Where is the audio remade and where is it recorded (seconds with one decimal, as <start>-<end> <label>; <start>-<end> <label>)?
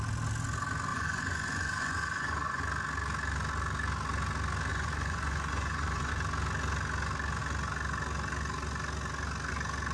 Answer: 0.0-0.9 recorded; 0.9-2.6 remade; 2.6-4.7 recorded; 4.7-6.1 remade; 6.1-9.9 recorded